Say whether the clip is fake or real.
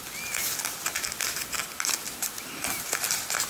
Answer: real